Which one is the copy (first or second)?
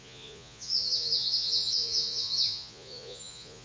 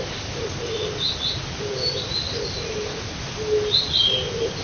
first